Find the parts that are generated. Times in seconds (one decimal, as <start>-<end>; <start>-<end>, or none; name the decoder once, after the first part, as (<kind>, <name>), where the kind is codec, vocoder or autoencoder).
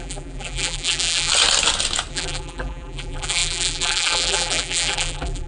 0.0-1.3 (vocoder, BigVGAN v2); 2.1-5.5